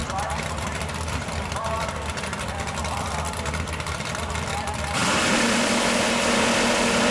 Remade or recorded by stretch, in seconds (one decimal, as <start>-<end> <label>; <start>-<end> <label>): 0.0-5.0 remade; 5.0-5.6 recorded; 5.6-7.1 remade